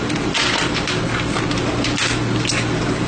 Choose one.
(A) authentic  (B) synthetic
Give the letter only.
A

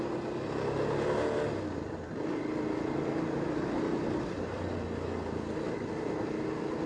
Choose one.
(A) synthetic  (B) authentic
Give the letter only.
B